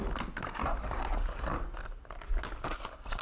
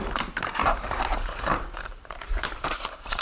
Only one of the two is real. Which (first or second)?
first